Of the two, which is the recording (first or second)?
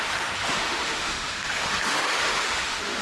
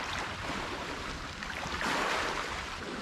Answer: second